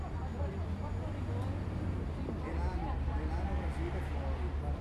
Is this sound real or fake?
real